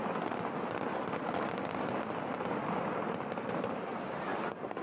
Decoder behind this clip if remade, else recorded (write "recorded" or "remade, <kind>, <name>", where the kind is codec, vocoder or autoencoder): recorded